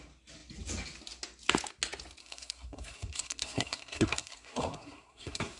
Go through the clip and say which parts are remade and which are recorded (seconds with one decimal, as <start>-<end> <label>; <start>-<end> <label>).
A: 0.0-2.2 recorded; 2.2-5.6 remade